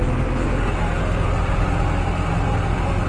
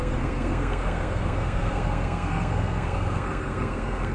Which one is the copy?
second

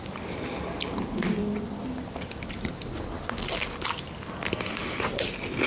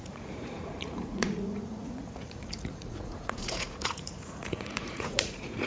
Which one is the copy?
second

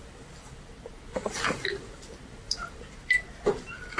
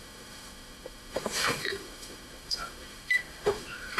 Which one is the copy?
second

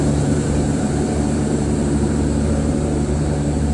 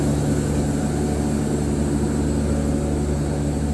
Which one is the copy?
first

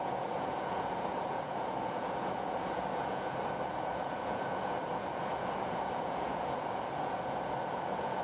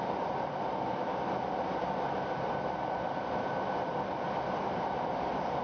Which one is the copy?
first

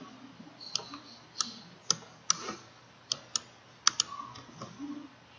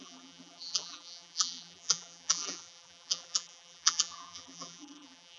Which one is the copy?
second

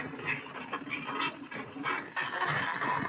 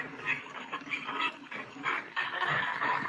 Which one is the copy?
second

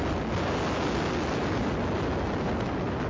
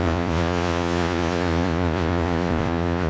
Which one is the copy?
second